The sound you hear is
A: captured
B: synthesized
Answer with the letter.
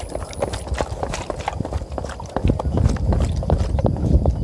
A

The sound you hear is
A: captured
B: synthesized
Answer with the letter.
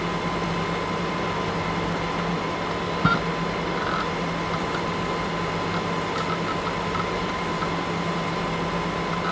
A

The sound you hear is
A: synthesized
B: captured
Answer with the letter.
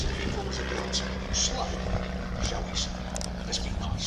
B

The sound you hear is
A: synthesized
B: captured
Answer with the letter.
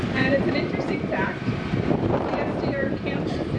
A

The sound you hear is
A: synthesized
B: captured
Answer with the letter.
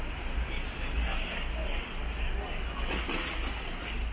B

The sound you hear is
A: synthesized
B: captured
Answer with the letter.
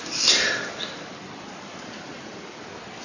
B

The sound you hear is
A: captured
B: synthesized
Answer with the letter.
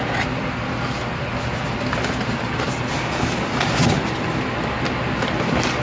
A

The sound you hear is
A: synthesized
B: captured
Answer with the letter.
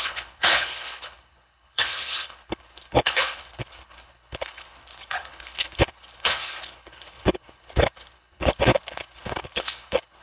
A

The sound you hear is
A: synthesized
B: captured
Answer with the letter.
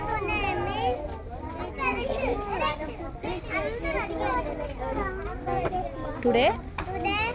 B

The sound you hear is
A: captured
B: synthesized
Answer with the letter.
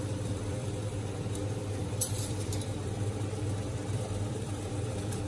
B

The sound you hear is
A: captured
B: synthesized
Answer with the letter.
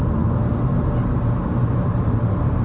A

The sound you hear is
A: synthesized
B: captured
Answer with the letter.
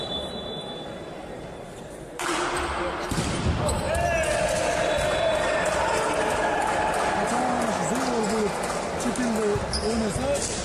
B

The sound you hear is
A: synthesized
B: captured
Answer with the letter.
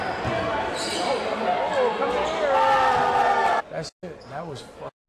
B